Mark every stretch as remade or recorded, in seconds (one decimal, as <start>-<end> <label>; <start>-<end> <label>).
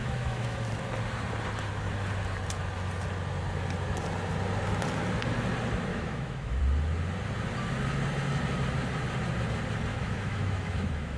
0.0-0.7 remade; 0.7-5.9 recorded; 5.9-6.6 remade; 6.6-9.9 recorded; 9.9-11.2 remade